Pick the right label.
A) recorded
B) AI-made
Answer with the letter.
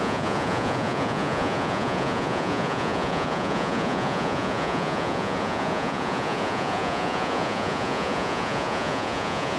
B